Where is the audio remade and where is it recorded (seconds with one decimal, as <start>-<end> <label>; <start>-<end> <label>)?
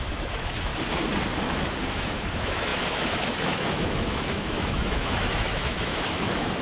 0.0-0.7 remade; 0.7-1.9 recorded; 1.9-6.6 remade